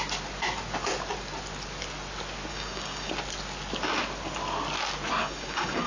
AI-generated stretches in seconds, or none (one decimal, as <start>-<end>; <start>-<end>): 2.5-3.1; 5.2-5.9